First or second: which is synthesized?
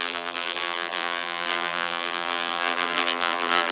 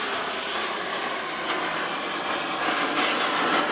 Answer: first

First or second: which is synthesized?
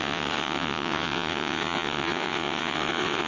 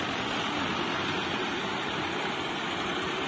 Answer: first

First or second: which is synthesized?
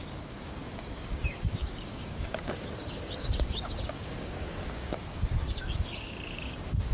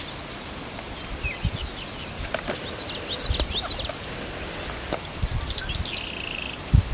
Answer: first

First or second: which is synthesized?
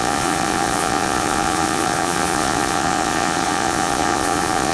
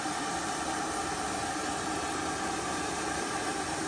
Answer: first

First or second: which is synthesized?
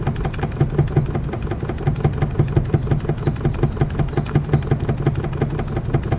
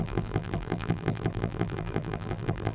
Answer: second